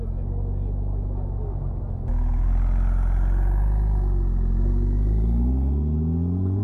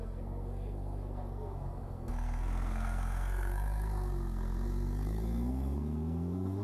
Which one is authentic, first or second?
first